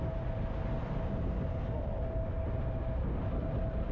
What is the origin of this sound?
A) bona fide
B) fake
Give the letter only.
A